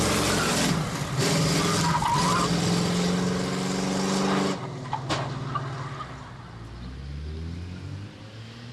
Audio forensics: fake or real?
real